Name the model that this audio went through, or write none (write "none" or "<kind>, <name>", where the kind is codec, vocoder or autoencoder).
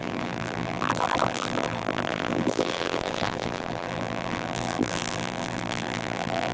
vocoder, BigVGAN v2